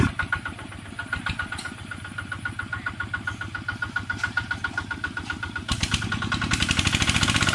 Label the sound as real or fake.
fake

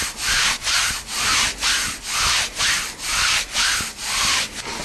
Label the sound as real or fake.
real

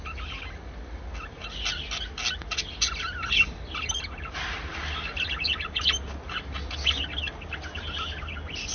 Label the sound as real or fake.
real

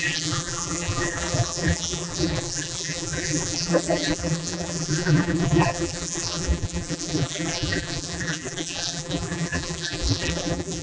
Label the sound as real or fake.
fake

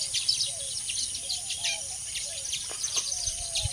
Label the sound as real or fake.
real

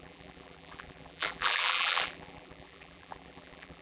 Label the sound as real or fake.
fake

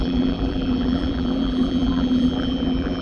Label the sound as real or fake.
fake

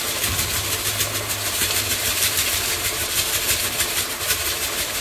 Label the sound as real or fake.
fake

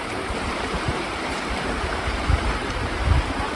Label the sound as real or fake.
fake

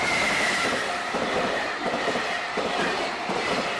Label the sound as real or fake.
fake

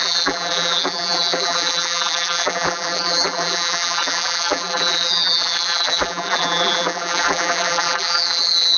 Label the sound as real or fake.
fake